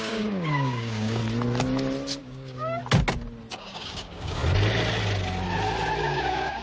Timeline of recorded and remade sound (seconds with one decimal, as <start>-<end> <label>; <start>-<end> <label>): 0.0-1.2 remade; 1.2-2.2 recorded; 2.2-2.8 remade; 2.8-3.5 recorded; 3.5-4.4 remade; 4.4-6.0 recorded; 6.0-6.6 remade